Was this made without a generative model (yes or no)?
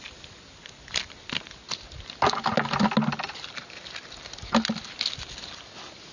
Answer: yes